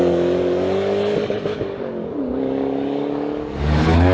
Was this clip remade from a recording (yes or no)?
yes